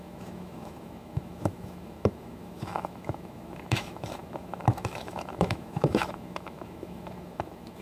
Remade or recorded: remade